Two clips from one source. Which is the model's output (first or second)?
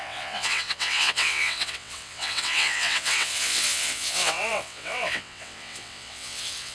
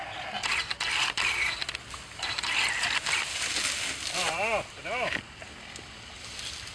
first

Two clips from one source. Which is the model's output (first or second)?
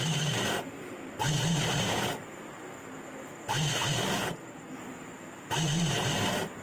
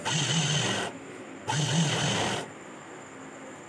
first